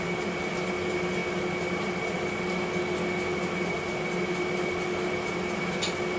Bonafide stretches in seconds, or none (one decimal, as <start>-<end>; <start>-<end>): 0.0-6.2